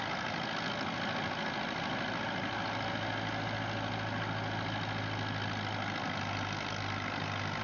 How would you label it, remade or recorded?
recorded